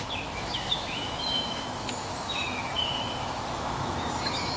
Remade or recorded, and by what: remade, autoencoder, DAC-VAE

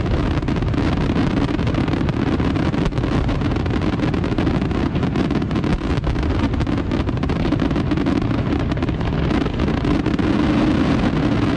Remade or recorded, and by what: recorded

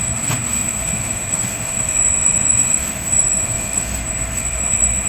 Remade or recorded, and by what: remade, autoencoder, DAC-VAE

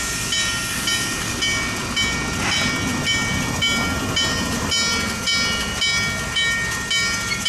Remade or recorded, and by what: recorded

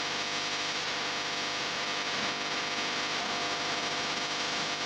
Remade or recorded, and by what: recorded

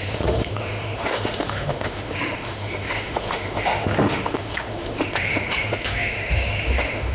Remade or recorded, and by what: remade, autoencoder, DAC-VAE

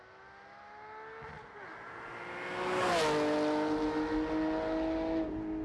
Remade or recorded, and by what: recorded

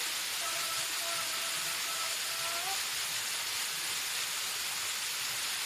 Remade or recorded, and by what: recorded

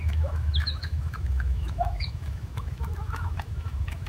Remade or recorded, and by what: remade, autoencoder, DAC-VAE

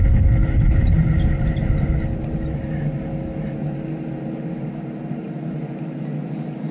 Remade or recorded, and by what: recorded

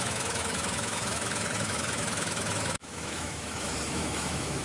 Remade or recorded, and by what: remade, autoencoder, DAC-VAE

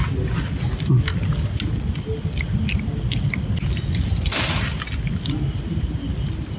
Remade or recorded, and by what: recorded